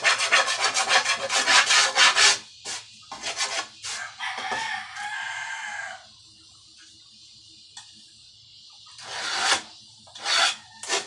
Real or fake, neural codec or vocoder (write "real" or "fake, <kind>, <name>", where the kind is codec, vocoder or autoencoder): real